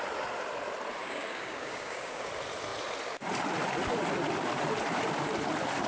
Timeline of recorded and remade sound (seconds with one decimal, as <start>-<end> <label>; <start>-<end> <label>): 0.0-1.0 recorded; 1.0-2.3 remade; 2.3-5.9 recorded